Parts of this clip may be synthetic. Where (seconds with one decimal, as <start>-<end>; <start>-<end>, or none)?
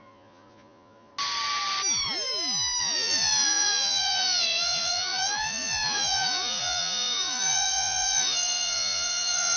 0.0-1.1; 2.8-9.6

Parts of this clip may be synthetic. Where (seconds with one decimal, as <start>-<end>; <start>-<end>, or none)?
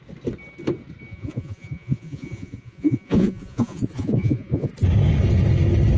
1.1-4.7